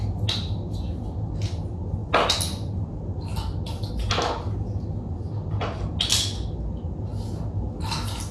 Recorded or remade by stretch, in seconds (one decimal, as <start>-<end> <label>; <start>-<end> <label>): 0.0-8.3 recorded

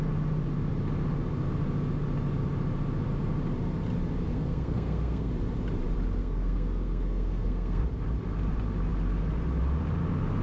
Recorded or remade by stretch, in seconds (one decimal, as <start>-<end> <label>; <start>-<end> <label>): 0.0-4.3 recorded; 4.3-5.3 remade; 5.3-6.2 recorded; 6.2-7.8 remade; 7.8-10.4 recorded

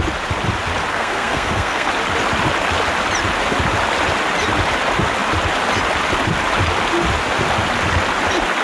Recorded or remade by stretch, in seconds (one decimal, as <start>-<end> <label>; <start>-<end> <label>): 0.0-0.9 recorded; 0.9-1.9 remade; 1.9-8.6 recorded

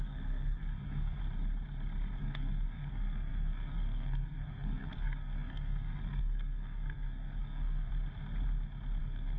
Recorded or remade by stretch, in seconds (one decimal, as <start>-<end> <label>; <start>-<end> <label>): 0.0-1.2 remade; 1.2-2.2 recorded; 2.2-7.9 remade; 7.9-9.0 recorded; 9.0-9.4 remade

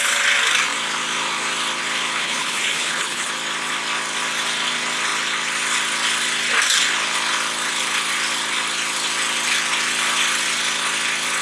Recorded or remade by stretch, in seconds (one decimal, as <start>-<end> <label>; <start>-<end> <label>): 0.0-2.2 recorded; 2.2-3.3 remade; 3.3-11.4 recorded

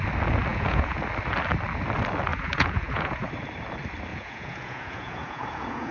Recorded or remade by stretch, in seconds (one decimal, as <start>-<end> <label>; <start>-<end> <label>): 0.0-0.5 recorded; 0.5-1.0 remade; 1.0-2.3 recorded; 2.3-3.3 remade; 3.3-4.1 recorded; 4.1-5.9 remade

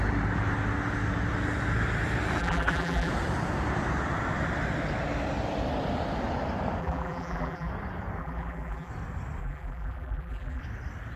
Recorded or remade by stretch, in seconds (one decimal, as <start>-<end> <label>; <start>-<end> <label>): 0.0-2.4 recorded; 2.4-3.1 remade; 3.1-6.8 recorded; 6.8-7.7 remade; 7.7-8.2 recorded; 8.2-8.9 remade; 8.9-9.4 recorded; 9.4-10.6 remade; 10.6-11.2 recorded

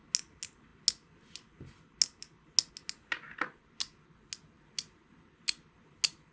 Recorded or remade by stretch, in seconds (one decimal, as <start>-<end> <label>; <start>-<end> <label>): 0.0-6.3 recorded